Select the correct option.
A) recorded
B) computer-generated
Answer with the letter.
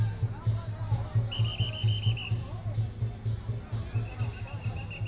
A